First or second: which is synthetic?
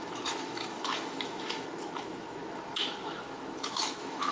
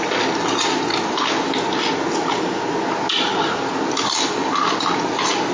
first